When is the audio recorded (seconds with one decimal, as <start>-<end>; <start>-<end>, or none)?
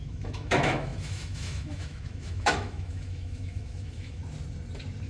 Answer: 4.2-5.1